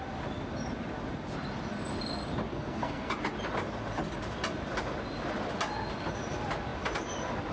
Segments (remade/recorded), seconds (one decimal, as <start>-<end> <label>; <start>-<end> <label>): 0.0-2.5 recorded; 2.5-3.1 remade; 3.1-7.5 recorded